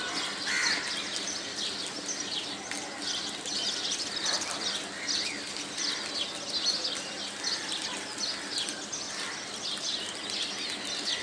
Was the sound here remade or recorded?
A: recorded